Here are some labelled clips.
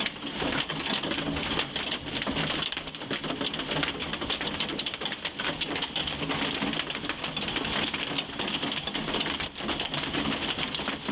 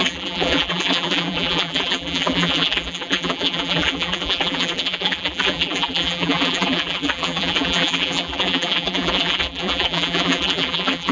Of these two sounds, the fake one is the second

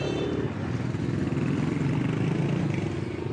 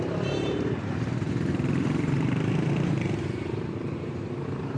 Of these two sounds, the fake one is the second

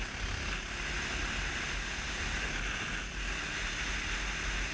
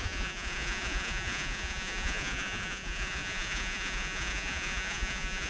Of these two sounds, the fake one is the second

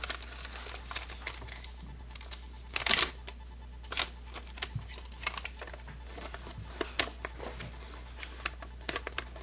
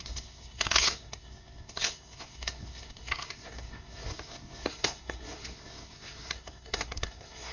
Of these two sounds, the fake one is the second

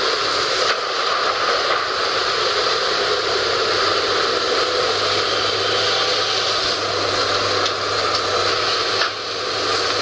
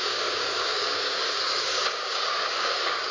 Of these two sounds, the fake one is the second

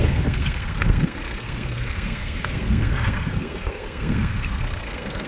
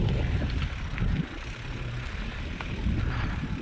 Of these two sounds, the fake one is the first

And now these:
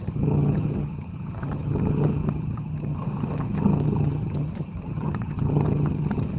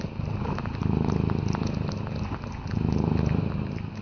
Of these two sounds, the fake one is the first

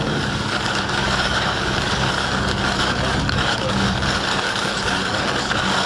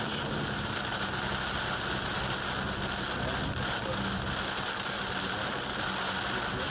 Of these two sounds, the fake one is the first